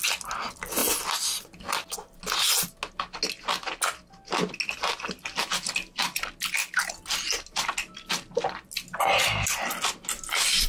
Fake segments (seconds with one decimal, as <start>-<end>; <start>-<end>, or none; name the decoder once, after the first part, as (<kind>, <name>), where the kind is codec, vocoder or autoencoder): none